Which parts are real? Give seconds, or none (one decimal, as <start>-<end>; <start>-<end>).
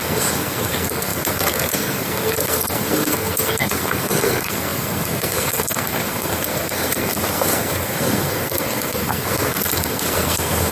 none